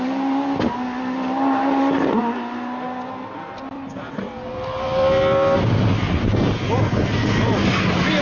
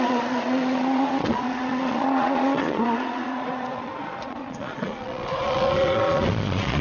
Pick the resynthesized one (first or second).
second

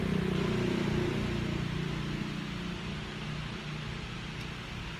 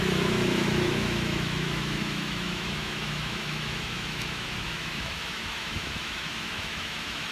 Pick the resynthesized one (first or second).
second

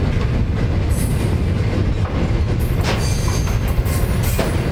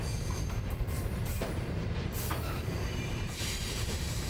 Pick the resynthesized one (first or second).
second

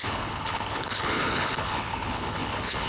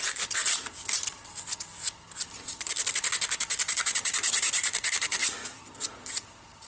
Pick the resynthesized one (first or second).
first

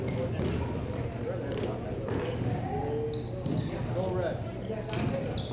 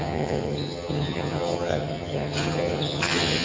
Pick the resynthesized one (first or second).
second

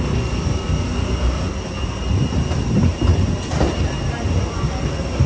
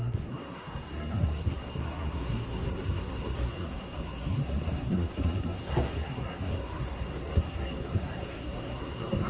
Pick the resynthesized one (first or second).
second